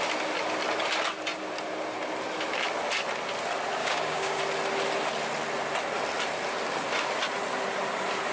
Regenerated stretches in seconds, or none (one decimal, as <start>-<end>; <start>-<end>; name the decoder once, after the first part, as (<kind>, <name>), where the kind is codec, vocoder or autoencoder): 3.8-4.4 (codec, DAC)